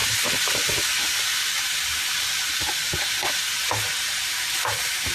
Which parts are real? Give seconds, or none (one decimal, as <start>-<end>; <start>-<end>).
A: 3.1-5.1